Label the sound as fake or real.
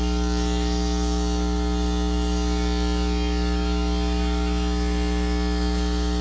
fake